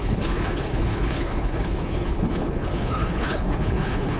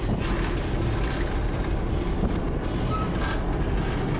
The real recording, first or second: second